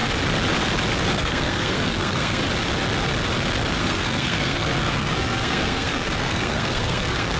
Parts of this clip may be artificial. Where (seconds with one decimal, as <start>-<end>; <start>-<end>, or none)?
1.1-2.4; 3.8-7.4